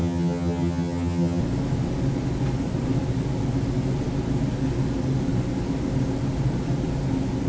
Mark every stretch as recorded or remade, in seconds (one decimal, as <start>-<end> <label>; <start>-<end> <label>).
0.0-1.4 remade; 1.4-7.5 recorded